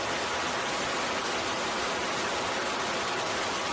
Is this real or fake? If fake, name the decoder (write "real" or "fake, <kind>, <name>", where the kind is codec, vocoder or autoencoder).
real